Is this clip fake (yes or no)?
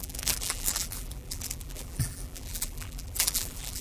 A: yes